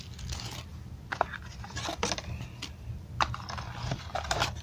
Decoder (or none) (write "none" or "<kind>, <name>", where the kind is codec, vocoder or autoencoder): none